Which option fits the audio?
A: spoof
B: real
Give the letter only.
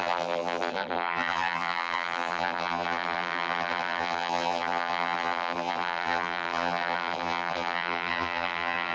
A